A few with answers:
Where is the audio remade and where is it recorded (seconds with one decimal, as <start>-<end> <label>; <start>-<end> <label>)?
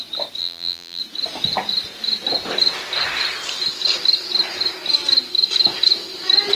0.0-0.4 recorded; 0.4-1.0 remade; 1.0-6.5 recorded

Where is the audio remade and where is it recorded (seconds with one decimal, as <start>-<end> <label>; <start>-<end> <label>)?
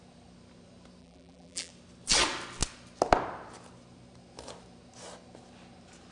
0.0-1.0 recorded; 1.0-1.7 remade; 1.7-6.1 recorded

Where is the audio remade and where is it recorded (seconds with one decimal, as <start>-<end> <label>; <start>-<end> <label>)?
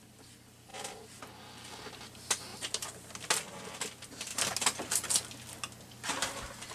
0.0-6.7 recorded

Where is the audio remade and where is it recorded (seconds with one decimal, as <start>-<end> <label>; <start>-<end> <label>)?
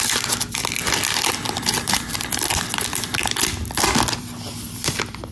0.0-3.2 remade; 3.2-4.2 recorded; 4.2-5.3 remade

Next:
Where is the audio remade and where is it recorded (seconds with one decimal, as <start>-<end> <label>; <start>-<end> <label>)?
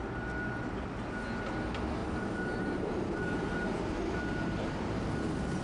0.0-2.0 recorded; 2.0-5.6 remade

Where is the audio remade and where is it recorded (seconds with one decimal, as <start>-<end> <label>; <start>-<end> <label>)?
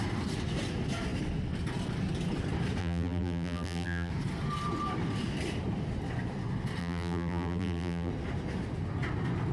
0.0-2.8 recorded; 2.8-4.1 remade; 4.1-6.8 recorded; 6.8-8.1 remade; 8.1-9.5 recorded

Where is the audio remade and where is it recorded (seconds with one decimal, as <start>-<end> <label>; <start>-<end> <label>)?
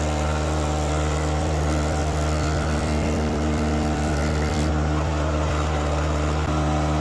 0.0-2.0 recorded; 2.0-4.7 remade; 4.7-7.0 recorded